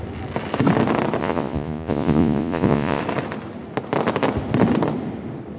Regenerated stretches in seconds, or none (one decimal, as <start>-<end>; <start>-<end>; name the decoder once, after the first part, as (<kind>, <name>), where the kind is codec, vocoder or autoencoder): 1.2-3.0 (vocoder, Vocos)